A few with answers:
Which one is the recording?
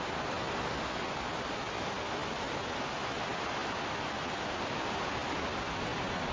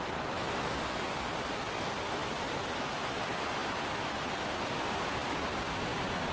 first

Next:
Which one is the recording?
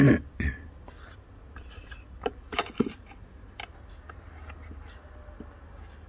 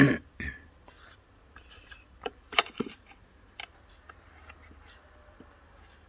first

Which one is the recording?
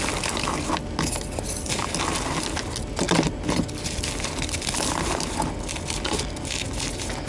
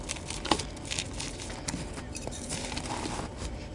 first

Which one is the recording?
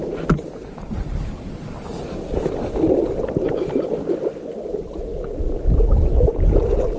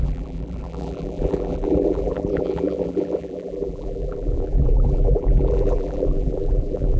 first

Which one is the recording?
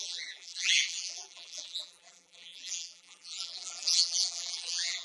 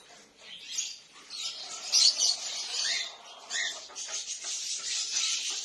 second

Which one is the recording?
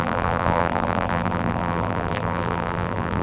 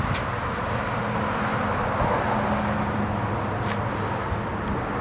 second